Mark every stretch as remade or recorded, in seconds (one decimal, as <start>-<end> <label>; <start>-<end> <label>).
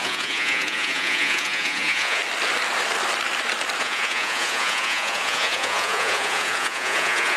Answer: 0.0-2.2 remade; 2.2-3.8 recorded; 3.8-7.4 remade